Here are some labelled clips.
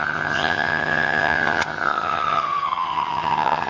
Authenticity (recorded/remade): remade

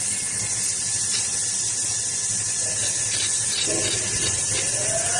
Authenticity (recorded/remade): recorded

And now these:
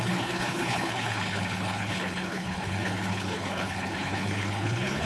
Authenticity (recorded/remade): remade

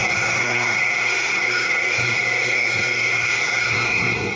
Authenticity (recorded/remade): remade